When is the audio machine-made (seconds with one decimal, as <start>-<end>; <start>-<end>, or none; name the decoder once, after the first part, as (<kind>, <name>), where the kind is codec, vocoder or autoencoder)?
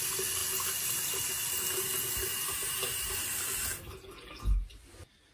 none